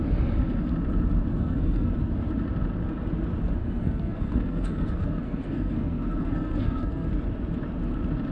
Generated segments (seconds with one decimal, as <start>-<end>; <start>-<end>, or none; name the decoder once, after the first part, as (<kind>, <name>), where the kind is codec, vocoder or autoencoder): 1.3-1.9 (codec, SNAC); 3.6-7.1